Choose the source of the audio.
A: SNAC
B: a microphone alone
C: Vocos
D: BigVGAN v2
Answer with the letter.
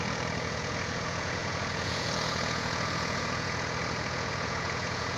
C